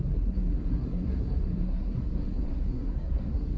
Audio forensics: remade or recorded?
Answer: remade